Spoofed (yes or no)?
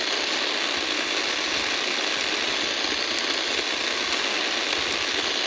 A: no